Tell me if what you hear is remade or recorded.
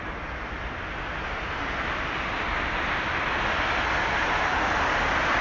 recorded